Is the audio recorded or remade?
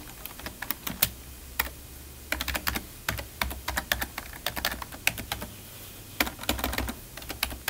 recorded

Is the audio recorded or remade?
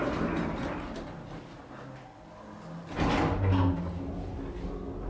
recorded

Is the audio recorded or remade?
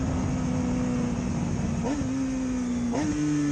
recorded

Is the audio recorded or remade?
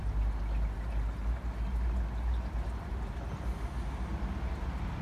recorded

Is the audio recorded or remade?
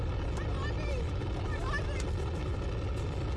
recorded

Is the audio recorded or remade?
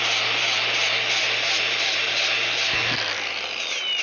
recorded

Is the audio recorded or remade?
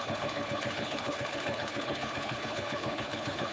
remade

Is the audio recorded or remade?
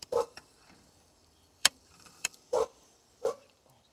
remade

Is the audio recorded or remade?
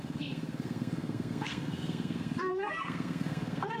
remade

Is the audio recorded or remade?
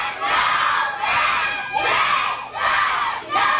recorded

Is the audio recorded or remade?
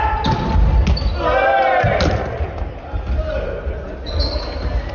recorded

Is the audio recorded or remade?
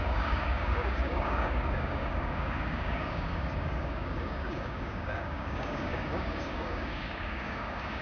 remade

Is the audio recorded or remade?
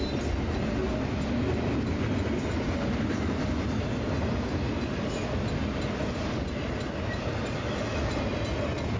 recorded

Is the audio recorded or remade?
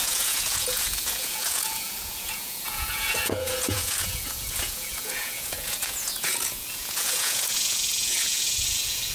remade